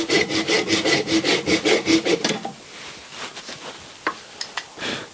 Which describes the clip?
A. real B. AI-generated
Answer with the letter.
A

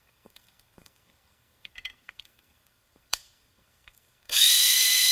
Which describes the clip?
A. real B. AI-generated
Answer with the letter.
B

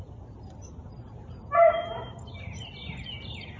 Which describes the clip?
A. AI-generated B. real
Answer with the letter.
B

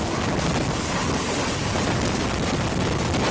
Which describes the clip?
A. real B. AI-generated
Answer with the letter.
A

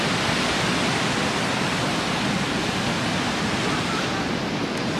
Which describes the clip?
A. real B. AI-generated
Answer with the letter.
A